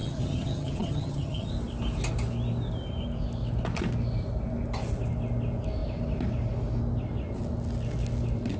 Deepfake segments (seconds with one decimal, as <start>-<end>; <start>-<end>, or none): 0.0-1.5